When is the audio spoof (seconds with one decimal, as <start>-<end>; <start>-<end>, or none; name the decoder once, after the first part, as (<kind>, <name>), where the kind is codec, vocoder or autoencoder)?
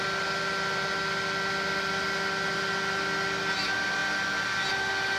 none